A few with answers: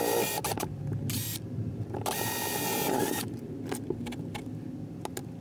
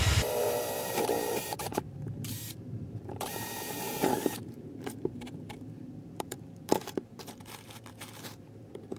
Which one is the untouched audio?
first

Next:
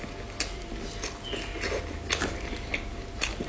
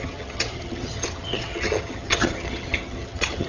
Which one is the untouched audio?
first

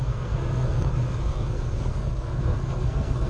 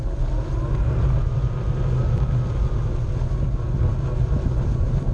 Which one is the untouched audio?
second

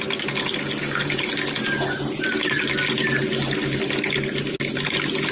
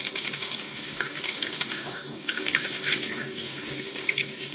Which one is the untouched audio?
first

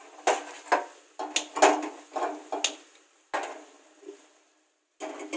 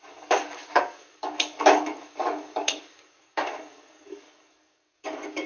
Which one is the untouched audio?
first